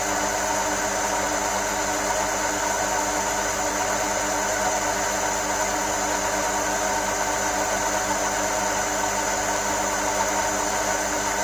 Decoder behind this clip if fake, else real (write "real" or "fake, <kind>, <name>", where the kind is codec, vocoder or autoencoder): real